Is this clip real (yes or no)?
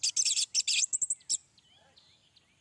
yes